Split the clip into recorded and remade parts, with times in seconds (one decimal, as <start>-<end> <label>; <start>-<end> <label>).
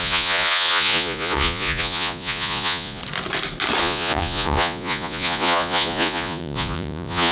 0.0-3.0 remade; 3.0-3.8 recorded; 3.8-7.3 remade